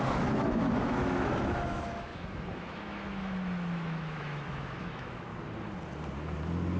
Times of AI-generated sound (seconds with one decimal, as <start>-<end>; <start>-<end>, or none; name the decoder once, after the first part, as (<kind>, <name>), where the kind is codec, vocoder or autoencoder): 0.0-5.3 (autoencoder, DAC-VAE)